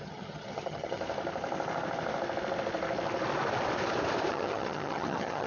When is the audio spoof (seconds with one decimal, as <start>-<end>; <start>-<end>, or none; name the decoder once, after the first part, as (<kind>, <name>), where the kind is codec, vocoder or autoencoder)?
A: 0.0-1.0 (vocoder, HiFi-GAN); 4.3-5.5